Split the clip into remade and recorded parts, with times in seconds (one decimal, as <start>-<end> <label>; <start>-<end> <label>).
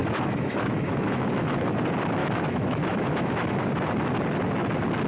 0.0-1.4 remade; 1.4-2.2 recorded; 2.2-3.7 remade; 3.7-5.1 recorded